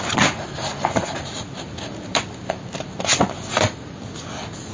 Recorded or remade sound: recorded